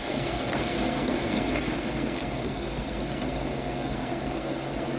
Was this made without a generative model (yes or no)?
no